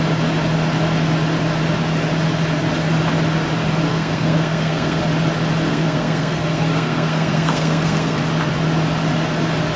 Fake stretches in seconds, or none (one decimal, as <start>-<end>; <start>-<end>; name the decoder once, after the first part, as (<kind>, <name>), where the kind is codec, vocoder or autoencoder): 3.9-5.0 (codec, SNAC); 5.7-8.2